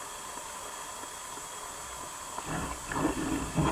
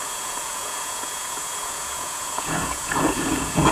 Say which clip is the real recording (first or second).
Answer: first